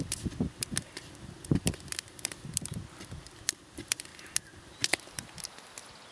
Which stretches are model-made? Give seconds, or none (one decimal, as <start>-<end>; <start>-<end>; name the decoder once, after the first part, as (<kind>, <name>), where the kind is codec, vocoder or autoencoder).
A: none